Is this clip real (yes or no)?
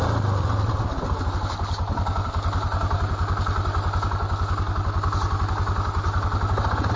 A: yes